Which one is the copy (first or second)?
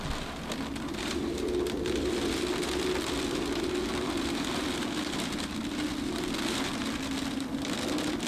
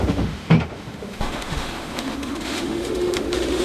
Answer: second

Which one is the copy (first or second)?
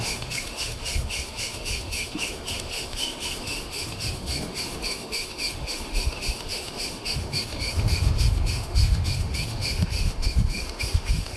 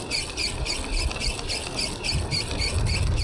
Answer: first